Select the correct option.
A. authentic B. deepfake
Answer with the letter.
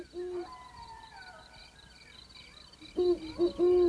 A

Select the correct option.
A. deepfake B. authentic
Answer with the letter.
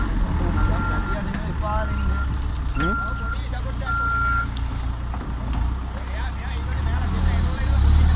B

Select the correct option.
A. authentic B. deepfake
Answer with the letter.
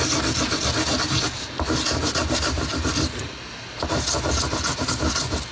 A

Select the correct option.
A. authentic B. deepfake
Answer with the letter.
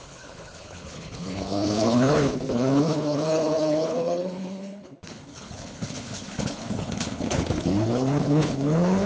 B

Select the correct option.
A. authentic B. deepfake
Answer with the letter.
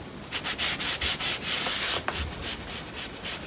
A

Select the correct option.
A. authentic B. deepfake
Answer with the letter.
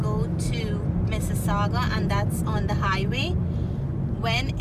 A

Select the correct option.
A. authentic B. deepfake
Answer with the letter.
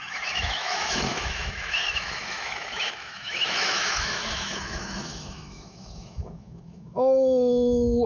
B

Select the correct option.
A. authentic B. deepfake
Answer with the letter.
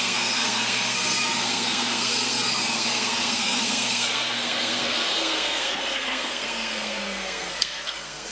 B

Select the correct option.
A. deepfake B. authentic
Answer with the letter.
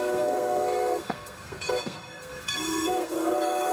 A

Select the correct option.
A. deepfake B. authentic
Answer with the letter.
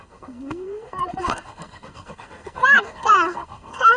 A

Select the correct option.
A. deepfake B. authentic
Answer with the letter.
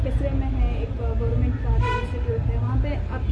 B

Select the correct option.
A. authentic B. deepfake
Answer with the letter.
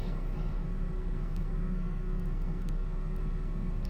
B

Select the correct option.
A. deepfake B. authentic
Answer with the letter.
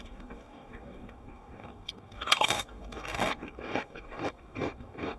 A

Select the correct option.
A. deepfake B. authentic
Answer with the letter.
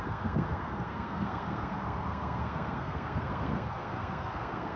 A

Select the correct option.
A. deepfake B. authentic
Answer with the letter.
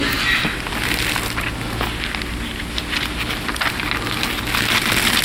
B